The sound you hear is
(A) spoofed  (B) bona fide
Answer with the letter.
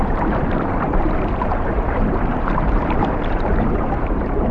A